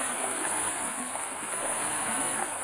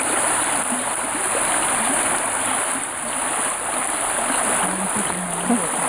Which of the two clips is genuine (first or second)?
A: second